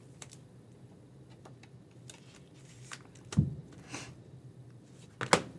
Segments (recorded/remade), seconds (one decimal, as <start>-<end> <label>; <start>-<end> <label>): 0.0-5.6 recorded